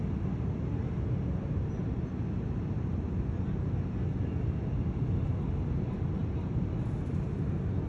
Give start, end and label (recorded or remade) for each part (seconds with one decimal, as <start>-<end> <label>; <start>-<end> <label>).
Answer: 0.0-7.9 recorded